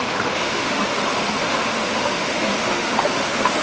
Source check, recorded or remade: remade